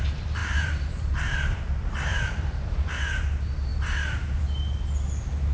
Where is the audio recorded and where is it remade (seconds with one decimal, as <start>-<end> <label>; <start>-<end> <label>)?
0.0-0.4 recorded; 0.4-1.7 remade; 1.7-2.1 recorded; 2.1-2.9 remade; 2.9-5.5 recorded